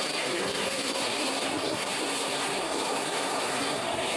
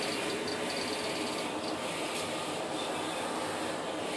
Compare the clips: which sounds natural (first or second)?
second